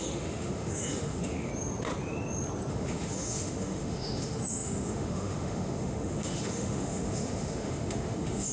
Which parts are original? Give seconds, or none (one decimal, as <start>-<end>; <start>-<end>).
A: 1.5-2.7